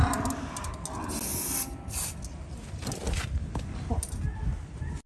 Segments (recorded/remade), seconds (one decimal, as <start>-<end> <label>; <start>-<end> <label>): 0.0-5.1 recorded